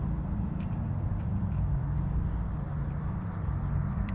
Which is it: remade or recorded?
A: remade